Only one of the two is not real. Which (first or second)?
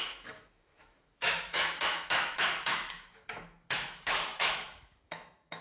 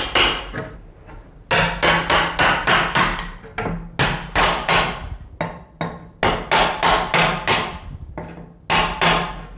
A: first